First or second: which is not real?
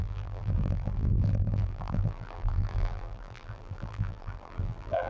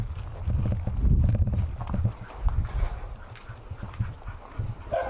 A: first